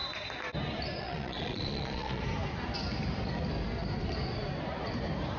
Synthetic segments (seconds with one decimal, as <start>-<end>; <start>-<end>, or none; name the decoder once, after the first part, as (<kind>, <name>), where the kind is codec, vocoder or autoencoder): 1.0-2.2 (vocoder, Vocos)